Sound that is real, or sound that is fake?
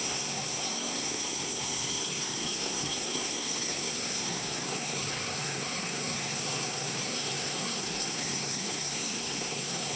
fake